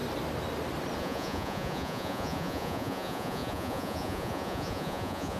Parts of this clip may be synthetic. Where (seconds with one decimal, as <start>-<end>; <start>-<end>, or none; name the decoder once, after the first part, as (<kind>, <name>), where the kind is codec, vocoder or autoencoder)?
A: 1.0-5.4 (vocoder, Vocos)